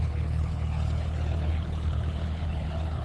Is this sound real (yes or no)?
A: no